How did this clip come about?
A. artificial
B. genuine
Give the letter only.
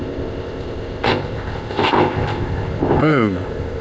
A